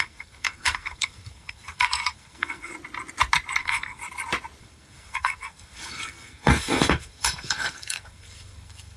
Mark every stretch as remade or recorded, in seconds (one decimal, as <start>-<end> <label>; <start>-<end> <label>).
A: 0.0-2.7 remade; 2.7-3.6 recorded; 3.6-4.0 remade; 4.0-4.6 recorded; 4.6-9.0 remade

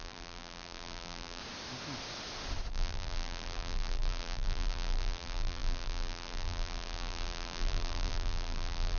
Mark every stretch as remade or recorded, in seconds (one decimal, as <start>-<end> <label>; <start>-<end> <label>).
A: 0.0-1.4 remade; 1.4-2.7 recorded; 2.7-9.0 remade

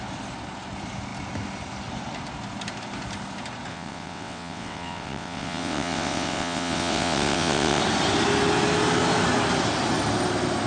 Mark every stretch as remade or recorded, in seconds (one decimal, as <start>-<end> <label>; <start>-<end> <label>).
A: 0.0-3.7 recorded; 3.7-7.8 remade; 7.8-10.7 recorded

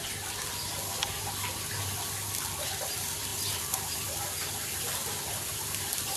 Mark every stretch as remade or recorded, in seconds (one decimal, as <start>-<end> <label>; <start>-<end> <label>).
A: 0.0-6.2 recorded

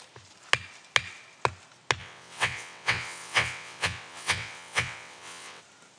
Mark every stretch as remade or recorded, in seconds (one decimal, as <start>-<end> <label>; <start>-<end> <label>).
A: 0.0-2.0 recorded; 2.0-5.6 remade; 5.6-6.0 recorded